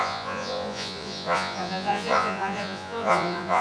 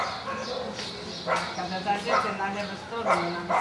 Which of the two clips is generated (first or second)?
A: first